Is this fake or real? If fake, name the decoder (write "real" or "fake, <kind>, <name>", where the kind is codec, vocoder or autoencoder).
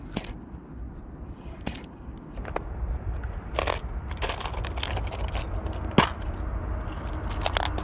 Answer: real